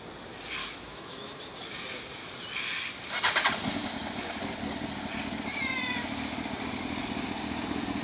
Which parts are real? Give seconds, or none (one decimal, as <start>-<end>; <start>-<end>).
0.0-0.6; 1.4-8.0